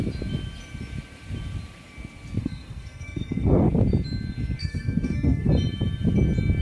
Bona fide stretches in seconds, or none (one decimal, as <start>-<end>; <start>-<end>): 0.0-2.4; 3.7-4.6; 5.5-6.6